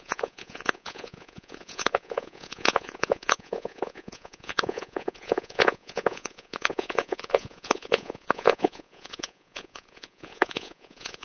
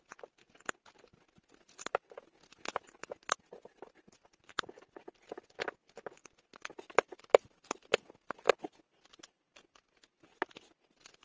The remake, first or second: first